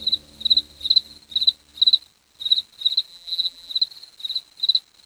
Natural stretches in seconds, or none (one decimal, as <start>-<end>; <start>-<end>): 0.0-3.1; 3.7-5.1